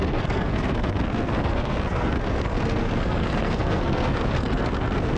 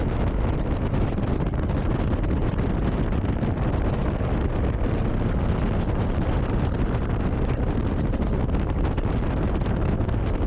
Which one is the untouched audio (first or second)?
second